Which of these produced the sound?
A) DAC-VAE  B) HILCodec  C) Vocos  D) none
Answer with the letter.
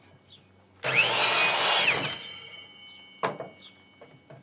D